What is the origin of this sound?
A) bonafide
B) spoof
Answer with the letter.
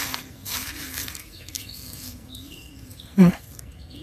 B